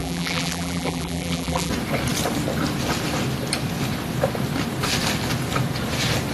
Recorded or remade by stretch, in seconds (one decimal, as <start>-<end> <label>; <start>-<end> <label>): 0.0-1.7 remade; 1.7-6.3 recorded